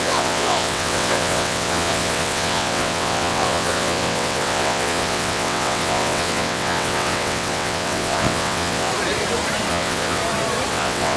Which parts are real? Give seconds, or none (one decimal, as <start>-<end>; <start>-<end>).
8.9-9.7; 10.2-10.7